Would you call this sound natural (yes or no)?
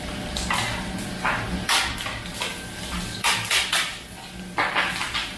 yes